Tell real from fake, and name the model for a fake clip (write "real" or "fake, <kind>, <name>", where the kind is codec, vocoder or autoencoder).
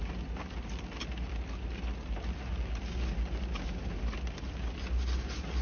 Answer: real